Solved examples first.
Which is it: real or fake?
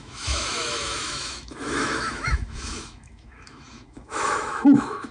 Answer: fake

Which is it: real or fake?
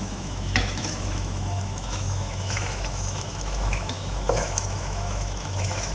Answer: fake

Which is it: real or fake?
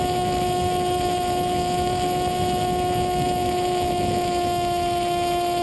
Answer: fake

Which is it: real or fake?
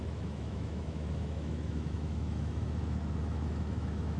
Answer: fake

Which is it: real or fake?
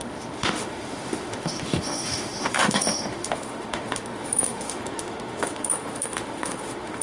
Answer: fake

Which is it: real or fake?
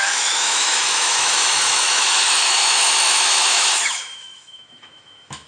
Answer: fake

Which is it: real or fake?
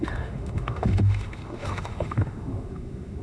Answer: fake